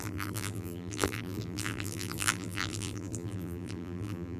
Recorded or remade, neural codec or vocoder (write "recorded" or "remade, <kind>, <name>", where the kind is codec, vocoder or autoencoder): remade, vocoder, BigVGAN v2